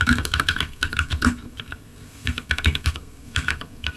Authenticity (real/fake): fake